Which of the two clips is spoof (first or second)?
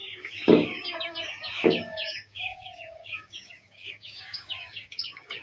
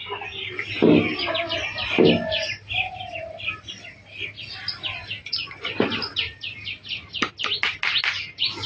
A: first